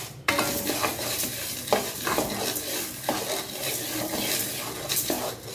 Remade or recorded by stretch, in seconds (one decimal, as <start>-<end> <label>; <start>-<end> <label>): 0.0-0.9 recorded; 0.9-1.5 remade; 1.5-5.5 recorded